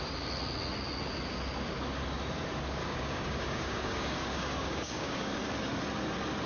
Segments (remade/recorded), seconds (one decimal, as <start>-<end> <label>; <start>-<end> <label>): 0.0-2.8 recorded; 2.8-5.3 remade; 5.3-6.5 recorded